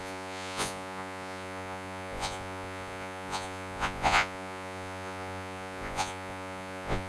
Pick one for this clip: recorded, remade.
remade